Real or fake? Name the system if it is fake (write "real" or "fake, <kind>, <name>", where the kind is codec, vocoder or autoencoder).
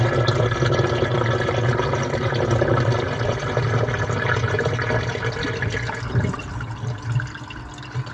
real